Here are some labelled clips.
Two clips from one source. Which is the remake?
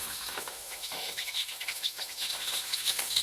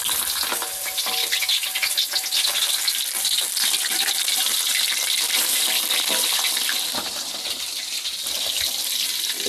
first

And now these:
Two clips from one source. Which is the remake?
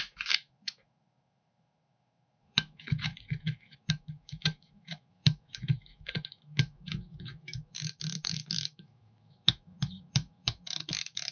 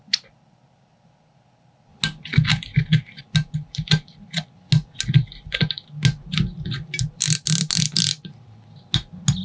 first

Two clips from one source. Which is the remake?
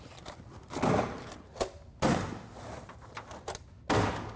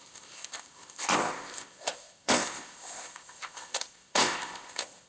second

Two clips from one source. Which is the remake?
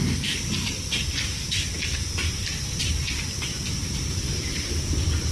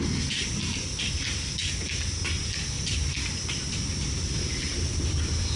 first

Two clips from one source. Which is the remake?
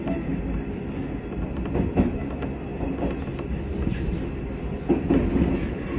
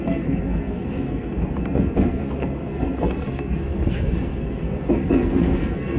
second